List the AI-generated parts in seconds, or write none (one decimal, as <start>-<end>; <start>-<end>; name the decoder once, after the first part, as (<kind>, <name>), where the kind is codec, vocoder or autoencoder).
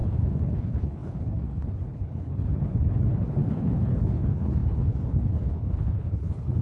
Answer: 0.0-6.6 (codec, HILCodec)